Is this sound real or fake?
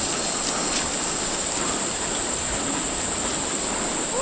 real